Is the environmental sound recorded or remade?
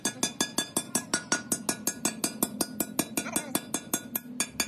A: recorded